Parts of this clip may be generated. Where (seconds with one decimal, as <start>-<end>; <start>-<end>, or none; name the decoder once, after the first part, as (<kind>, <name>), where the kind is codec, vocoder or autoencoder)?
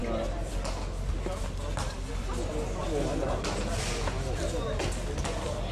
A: none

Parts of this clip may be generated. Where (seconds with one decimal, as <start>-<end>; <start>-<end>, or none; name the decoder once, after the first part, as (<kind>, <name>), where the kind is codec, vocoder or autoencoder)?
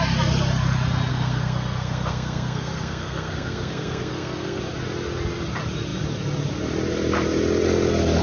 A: 1.1-4.6 (codec, SNAC)